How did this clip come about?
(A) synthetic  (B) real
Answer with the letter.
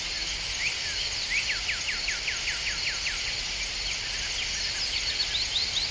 B